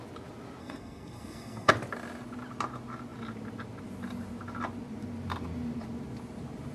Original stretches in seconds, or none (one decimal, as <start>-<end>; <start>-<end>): 0.0-0.6; 1.7-6.7